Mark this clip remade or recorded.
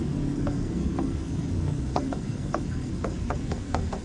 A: remade